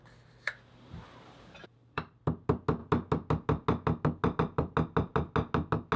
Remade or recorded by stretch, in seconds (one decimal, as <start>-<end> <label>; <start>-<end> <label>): 0.0-1.6 recorded; 1.6-2.2 remade; 2.2-6.0 recorded